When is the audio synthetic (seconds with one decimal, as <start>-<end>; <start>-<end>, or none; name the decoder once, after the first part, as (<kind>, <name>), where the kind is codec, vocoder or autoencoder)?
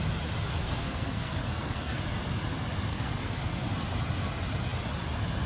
0.5-2.0 (codec, SNAC); 2.9-3.7